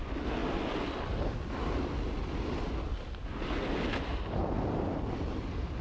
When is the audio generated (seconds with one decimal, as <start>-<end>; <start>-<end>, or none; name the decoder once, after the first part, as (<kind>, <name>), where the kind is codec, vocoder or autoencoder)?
none